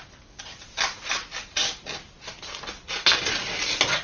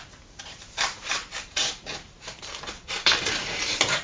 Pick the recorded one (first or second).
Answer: first